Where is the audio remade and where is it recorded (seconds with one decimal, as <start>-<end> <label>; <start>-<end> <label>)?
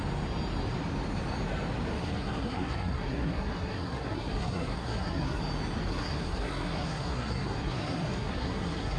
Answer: 0.0-1.9 recorded; 1.9-5.4 remade; 5.4-5.9 recorded; 5.9-9.0 remade